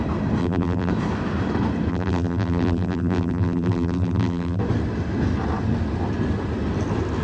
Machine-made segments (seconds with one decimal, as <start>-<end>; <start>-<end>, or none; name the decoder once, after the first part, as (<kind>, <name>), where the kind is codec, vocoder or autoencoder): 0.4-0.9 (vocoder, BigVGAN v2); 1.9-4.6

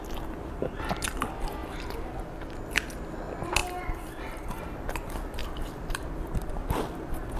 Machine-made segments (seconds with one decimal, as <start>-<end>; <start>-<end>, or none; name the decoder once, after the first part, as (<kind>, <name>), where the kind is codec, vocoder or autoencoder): 1.6-2.6 (vocoder, BigVGAN v2); 3.6-4.6; 5.4-6.1

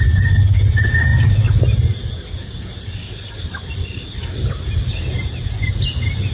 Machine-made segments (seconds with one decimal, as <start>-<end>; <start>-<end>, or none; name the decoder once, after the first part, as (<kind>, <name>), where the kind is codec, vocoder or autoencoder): none